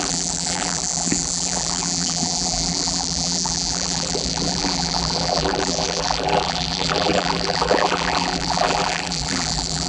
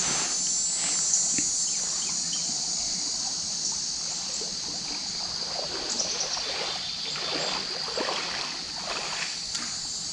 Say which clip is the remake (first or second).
first